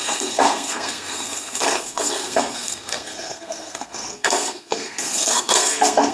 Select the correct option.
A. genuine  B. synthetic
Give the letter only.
B